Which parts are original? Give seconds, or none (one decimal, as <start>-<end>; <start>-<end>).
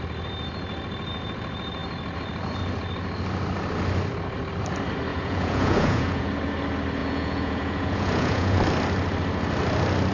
0.0-5.1; 6.3-7.0; 8.6-10.1